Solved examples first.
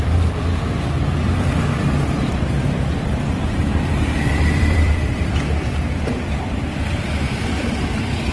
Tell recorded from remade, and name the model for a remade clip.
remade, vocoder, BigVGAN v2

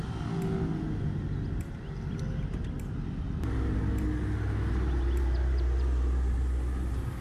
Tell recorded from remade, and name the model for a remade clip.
recorded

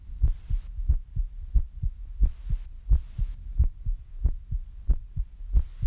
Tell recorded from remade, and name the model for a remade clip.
recorded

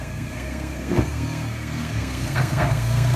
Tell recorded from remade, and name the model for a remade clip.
remade, codec, SNAC